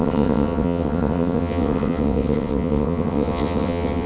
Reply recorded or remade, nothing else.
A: remade